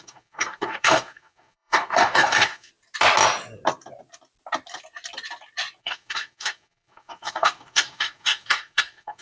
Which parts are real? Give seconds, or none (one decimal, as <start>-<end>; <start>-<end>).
2.7-5.8